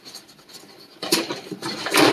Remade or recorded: recorded